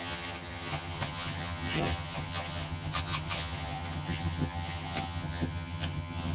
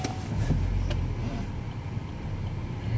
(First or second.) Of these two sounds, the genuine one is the second